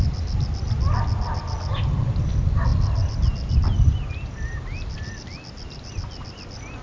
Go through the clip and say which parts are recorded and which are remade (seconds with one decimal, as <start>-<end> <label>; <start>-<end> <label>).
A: 0.0-6.8 recorded